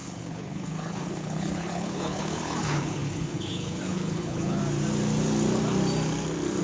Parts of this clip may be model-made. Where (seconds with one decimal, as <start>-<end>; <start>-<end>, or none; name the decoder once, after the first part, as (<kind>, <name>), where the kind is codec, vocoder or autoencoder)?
0.0-4.6 (codec, HILCodec)

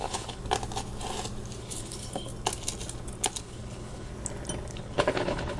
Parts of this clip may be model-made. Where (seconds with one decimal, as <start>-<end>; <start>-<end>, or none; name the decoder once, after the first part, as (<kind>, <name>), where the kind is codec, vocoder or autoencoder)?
0.0-0.4 (codec, HILCodec); 1.6-2.3; 3.4-4.1; 4.7-5.6

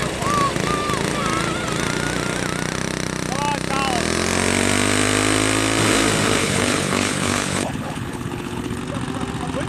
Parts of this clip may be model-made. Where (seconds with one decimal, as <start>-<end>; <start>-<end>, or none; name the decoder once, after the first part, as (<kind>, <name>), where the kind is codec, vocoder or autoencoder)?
6.4-8.8 (codec, HILCodec)

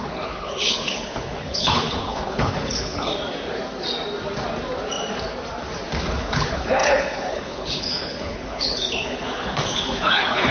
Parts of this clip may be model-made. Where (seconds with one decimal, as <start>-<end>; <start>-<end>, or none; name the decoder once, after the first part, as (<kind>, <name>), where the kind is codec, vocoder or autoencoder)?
0.0-3.1 (codec, HILCodec); 6.1-10.5